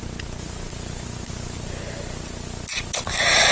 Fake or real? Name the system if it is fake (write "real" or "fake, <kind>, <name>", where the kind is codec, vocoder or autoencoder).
real